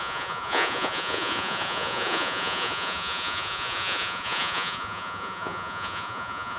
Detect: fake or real fake